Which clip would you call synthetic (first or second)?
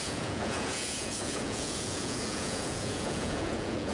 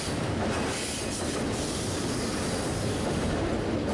first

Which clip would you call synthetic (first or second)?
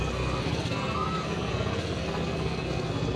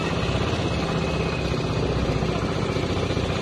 first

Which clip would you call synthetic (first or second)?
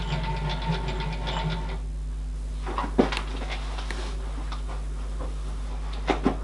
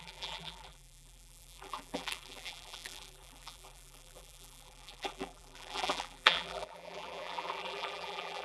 second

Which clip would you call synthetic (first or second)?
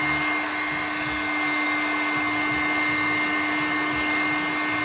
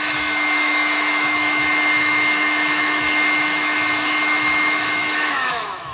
second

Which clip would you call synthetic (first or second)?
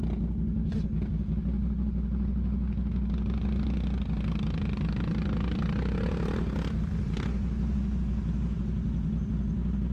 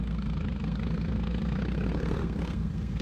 second